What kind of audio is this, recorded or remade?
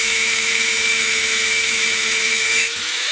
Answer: remade